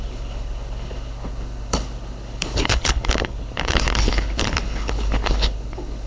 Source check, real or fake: fake